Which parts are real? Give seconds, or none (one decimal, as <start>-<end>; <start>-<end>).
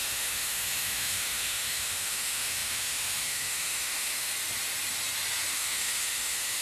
4.3-5.5